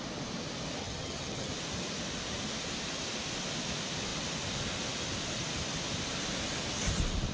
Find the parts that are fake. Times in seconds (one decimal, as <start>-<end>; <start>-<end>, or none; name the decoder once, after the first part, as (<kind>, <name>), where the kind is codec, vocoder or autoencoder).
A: 0.8-1.5 (vocoder, HiFi-GAN)